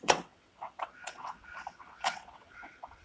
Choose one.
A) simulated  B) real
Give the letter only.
A